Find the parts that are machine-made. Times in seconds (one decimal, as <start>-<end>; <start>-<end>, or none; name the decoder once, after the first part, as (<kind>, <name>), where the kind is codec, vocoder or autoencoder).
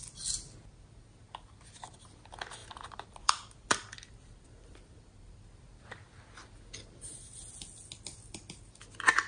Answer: 2.6-5.8 (vocoder, BigVGAN v2)